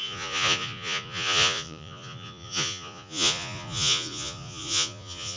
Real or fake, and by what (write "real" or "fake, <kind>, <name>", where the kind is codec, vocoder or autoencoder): fake, vocoder, Vocos